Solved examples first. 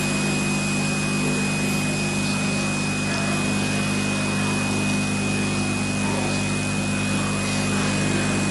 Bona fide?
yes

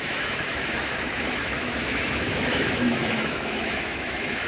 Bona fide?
no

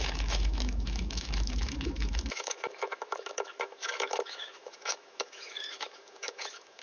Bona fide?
no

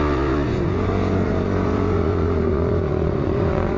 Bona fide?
no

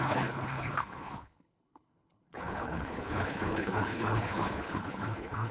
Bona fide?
no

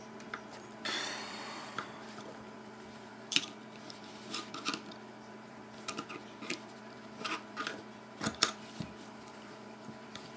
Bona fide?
no